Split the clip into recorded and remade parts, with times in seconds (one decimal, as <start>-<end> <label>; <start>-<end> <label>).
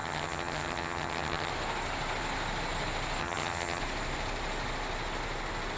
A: 0.0-1.5 remade; 1.5-3.2 recorded; 3.2-3.8 remade; 3.8-5.8 recorded